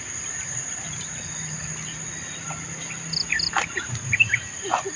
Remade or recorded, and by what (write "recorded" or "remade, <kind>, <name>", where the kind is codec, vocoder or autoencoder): recorded